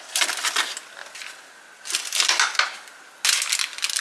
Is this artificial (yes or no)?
no